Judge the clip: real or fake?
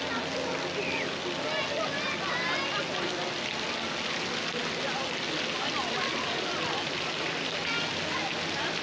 real